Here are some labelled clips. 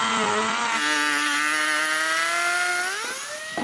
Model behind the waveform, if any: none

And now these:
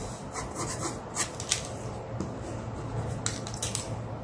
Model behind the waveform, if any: none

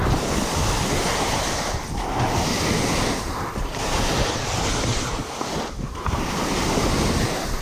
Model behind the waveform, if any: none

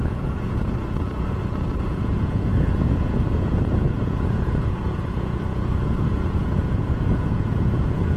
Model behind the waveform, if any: vocoder, Vocos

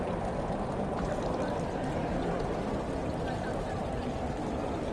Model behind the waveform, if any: none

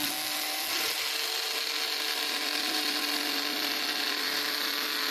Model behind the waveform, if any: none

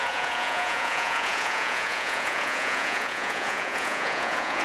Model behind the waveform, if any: vocoder, Vocos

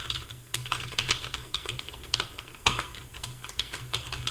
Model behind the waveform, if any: codec, SNAC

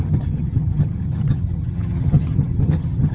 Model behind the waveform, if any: vocoder, HiFi-GAN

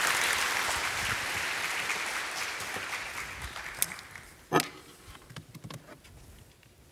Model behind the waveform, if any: none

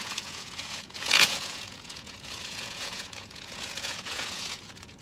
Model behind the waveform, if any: vocoder, Vocos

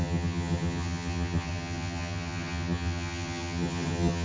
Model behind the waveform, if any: vocoder, HiFi-GAN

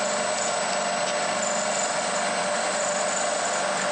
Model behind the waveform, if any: none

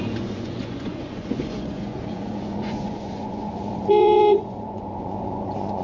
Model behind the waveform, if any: vocoder, Vocos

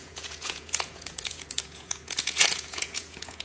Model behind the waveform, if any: vocoder, Vocos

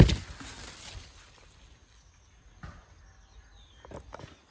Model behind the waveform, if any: none